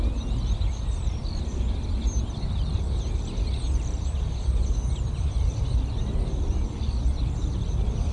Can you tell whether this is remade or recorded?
recorded